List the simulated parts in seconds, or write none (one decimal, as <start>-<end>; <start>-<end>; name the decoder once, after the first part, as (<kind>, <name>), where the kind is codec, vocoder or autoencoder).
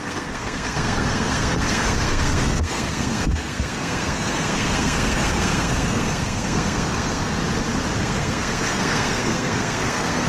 0.0-7.4 (codec, SNAC); 8.0-10.3